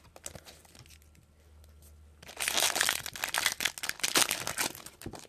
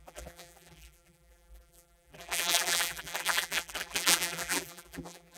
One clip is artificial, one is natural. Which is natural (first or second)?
first